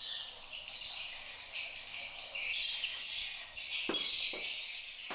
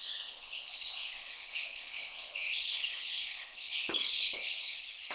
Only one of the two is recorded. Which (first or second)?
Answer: first